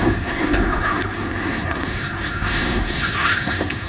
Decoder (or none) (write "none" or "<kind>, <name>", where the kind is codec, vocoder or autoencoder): codec, SNAC